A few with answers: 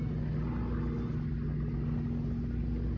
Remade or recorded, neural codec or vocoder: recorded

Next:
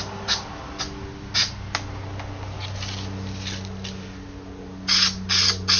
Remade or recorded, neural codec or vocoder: recorded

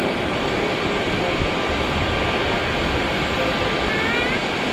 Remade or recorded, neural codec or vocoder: recorded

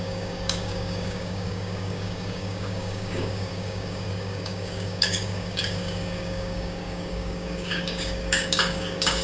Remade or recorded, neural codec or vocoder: remade, codec, DAC